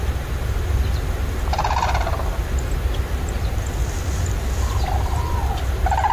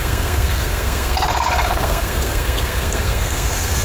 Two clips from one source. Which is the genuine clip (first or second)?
first